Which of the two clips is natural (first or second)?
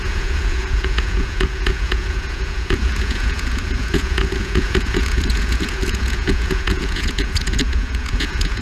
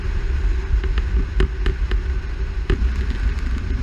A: second